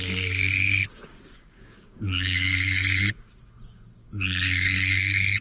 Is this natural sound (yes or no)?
no